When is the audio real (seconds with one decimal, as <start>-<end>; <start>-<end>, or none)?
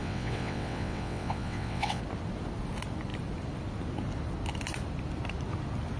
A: 2.0-6.0